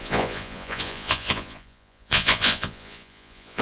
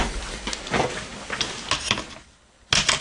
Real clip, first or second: second